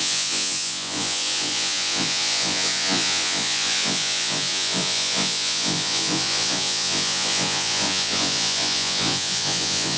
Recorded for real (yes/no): no